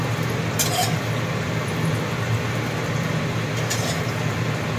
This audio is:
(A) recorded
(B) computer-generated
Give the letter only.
A